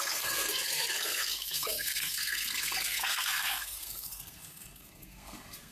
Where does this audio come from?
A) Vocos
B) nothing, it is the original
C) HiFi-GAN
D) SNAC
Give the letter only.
D